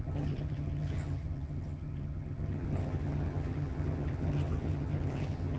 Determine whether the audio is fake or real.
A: fake